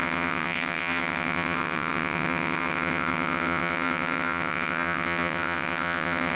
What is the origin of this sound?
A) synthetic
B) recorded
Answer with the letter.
A